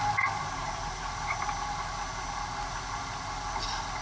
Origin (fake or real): real